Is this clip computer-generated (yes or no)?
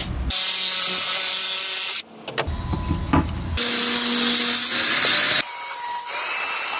no